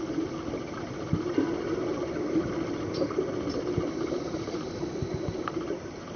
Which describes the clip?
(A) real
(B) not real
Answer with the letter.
A